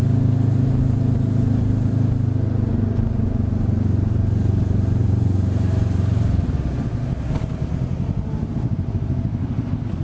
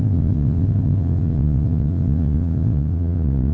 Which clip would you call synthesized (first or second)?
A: second